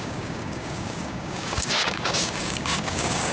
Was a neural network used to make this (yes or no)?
yes